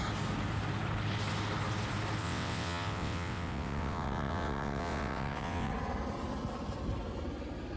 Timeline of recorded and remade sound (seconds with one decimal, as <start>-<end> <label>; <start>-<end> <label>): 0.0-2.2 recorded; 2.2-5.7 remade; 5.7-7.8 recorded